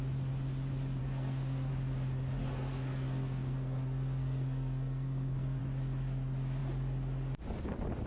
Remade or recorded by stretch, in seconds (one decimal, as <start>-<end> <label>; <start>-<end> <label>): 0.0-1.0 recorded; 1.0-1.7 remade; 1.7-2.4 recorded; 2.4-5.6 remade; 5.6-8.1 recorded